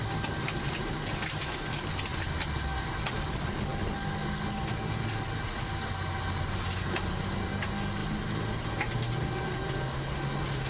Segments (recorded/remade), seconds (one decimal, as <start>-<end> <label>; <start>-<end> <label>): 0.0-10.7 recorded